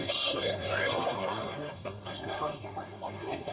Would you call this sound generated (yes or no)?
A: yes